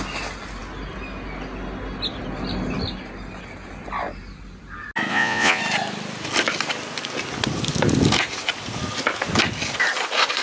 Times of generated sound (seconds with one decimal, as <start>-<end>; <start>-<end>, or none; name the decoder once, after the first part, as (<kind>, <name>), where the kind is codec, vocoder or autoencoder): 5.1-5.6 (vocoder, Vocos)